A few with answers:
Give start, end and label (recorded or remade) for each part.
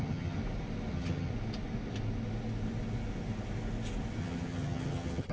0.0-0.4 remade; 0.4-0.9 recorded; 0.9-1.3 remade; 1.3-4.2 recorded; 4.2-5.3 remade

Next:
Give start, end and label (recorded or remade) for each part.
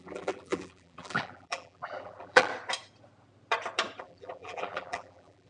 0.0-2.5 remade; 2.5-4.0 recorded; 4.0-5.5 remade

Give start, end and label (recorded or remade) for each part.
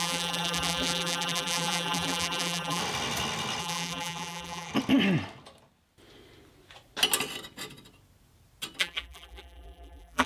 0.0-2.8 remade; 2.8-3.6 recorded; 3.6-4.7 remade; 4.7-8.8 recorded; 8.8-10.3 remade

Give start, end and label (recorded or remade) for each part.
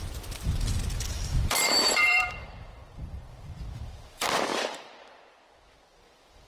0.0-6.5 remade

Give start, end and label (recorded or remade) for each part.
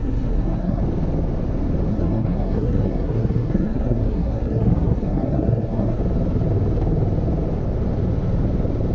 0.0-0.8 remade; 0.8-1.9 recorded; 1.9-6.0 remade; 6.0-8.9 recorded